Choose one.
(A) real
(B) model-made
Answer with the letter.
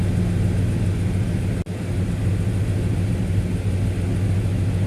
A